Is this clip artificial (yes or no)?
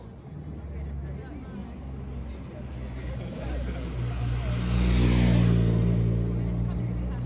no